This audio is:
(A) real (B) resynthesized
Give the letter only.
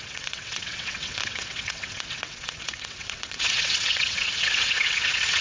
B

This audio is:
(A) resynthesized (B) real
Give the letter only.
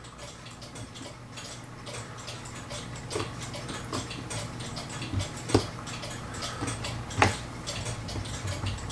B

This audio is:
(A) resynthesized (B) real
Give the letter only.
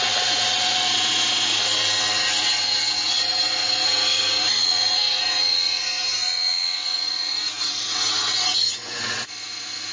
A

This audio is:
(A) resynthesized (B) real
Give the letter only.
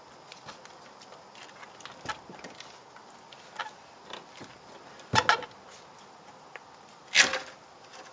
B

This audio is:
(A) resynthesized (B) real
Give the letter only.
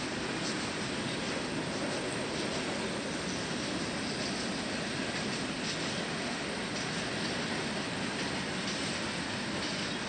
B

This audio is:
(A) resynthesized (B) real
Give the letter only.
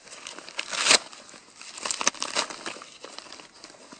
B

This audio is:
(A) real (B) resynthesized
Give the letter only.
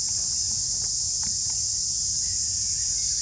A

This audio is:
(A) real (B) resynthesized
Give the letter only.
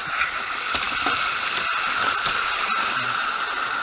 A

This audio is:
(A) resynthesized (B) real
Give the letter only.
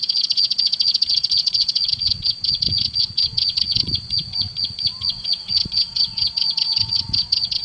A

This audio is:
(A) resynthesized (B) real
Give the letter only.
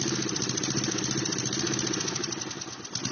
B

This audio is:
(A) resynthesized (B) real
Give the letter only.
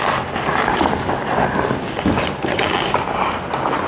B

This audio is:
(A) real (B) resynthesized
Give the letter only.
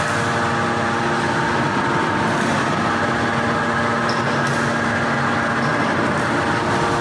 A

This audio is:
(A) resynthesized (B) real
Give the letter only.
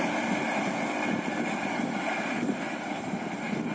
B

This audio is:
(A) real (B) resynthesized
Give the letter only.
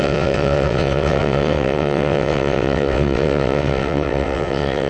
B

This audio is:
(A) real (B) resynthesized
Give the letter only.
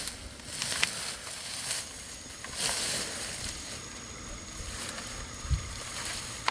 A